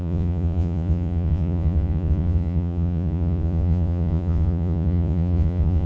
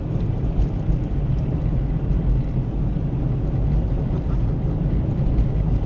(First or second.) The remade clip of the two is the first